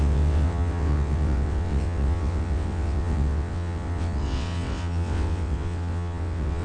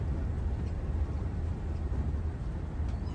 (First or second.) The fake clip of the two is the first